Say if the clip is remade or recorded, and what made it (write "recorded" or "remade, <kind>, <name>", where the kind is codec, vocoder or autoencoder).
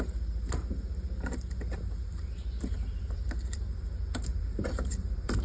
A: remade, vocoder, BigVGAN v2